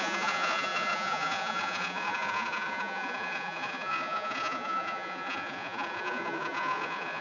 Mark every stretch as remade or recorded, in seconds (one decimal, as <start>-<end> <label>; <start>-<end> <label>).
0.0-7.2 remade